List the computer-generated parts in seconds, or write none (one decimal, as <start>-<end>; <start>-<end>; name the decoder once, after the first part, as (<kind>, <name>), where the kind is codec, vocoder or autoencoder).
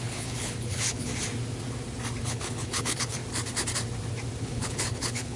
0.0-1.1 (codec, HILCodec); 2.2-3.2; 4.4-5.4